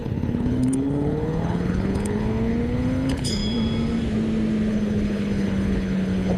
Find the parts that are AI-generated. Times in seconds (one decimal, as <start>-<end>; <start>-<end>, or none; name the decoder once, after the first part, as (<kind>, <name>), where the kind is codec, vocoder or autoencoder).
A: 0.0-3.4 (codec, HILCodec); 4.7-6.4